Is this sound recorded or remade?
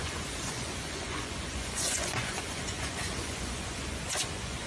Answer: remade